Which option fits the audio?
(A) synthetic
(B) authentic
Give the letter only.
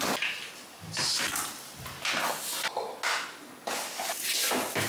B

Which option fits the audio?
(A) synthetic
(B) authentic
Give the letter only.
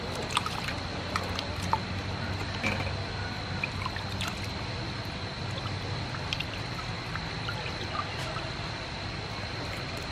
B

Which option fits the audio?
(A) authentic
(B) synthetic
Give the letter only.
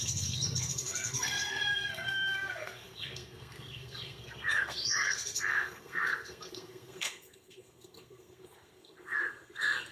B